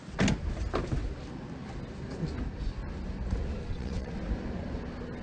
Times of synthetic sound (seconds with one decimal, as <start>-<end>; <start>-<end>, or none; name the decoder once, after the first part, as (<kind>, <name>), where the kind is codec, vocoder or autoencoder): 3.6-4.1 (vocoder, WaveNeXt)

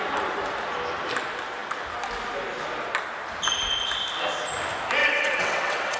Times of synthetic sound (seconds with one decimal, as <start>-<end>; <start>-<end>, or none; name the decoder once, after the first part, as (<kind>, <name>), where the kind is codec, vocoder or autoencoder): 5.0-6.0 (vocoder, WaveNeXt)

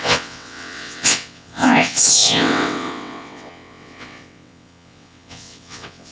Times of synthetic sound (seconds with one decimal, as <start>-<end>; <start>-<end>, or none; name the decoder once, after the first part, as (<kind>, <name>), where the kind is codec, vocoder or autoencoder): 0.0-6.1 (vocoder, WaveNeXt)